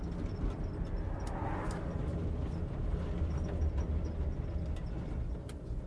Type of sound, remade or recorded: recorded